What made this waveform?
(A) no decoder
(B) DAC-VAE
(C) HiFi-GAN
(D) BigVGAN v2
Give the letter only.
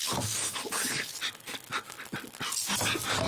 A